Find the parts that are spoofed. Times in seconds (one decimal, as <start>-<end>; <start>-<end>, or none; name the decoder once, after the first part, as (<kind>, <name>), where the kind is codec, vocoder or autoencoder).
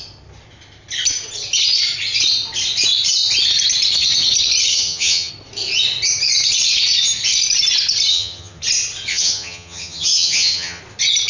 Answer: 4.7-5.3 (vocoder, HiFi-GAN); 8.1-8.6; 9.1-10.8